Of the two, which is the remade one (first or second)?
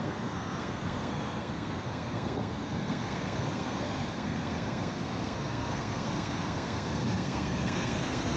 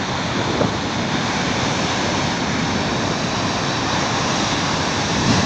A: first